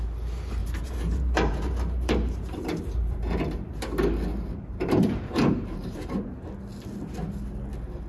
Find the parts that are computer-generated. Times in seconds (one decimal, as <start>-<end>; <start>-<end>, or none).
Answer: 0.6-3.8; 4.3-6.1